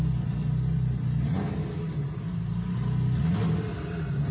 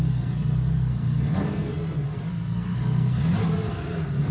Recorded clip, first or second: first